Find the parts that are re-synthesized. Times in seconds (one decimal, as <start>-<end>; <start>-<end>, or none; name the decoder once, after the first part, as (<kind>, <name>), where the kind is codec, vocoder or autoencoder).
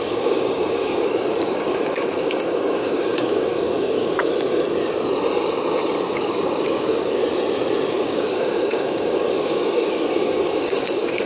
0.0-4.3 (codec, DAC); 6.0-7.2; 7.9-11.3